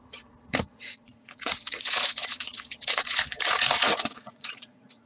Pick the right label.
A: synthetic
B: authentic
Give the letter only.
A